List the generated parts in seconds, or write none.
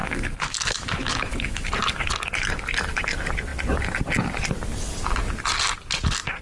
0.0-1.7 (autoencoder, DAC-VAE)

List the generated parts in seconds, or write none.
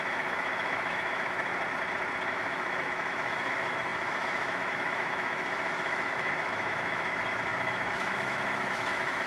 0.0-1.5 (autoencoder, DAC-VAE); 2.3-9.3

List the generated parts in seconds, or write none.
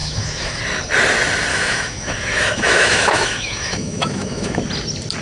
0.0-0.6 (autoencoder, DAC-VAE); 1.5-4.6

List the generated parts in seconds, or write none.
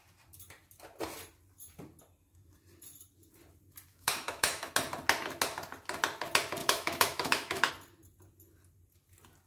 3.9-4.7 (autoencoder, DAC-VAE); 6.6-7.7